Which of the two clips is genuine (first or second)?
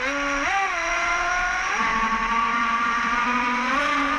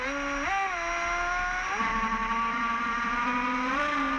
second